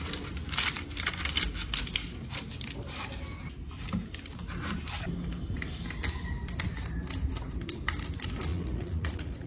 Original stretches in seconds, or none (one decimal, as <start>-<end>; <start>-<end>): 0.0-8.5